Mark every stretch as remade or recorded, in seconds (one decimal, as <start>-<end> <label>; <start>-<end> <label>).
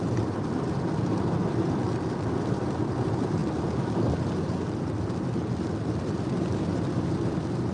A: 0.0-3.4 remade; 3.4-6.5 recorded; 6.5-7.7 remade